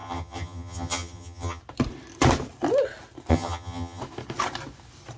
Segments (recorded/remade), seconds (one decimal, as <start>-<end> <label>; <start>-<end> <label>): 0.0-1.6 remade; 1.6-3.3 recorded; 3.3-4.0 remade; 4.0-5.2 recorded